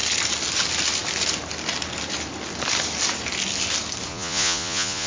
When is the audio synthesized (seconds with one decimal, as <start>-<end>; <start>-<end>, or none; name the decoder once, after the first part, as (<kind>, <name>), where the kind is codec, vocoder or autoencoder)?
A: 4.1-5.1 (vocoder, Vocos)